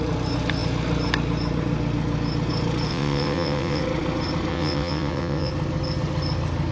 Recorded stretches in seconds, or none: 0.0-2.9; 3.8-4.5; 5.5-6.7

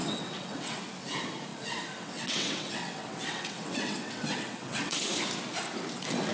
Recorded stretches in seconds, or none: 0.8-1.5; 5.0-6.3

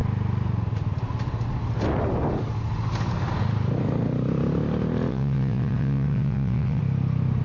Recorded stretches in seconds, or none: 0.0-5.1; 6.8-7.4